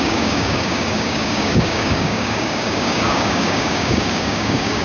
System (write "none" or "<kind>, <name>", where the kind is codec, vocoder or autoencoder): codec, DAC